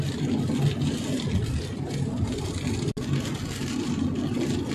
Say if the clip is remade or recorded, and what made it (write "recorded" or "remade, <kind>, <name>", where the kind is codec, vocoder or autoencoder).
recorded